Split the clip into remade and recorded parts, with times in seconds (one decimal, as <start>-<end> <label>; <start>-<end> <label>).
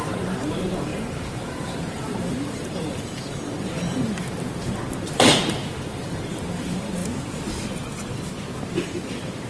0.0-7.0 remade; 7.0-8.7 recorded; 8.7-9.5 remade